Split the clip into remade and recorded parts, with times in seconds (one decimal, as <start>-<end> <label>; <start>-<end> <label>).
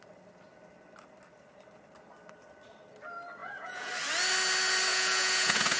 0.0-3.4 recorded; 3.4-3.9 remade; 3.9-4.9 recorded; 4.9-5.8 remade